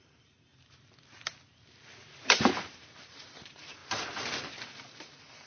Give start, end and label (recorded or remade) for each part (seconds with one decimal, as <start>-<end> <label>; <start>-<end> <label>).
0.0-0.5 remade; 0.5-2.2 recorded; 2.2-3.8 remade; 3.8-4.6 recorded; 4.6-5.5 remade